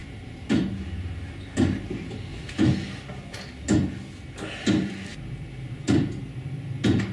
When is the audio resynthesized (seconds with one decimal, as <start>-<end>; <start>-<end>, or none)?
0.0-0.6; 2.3-2.9; 5.1-6.1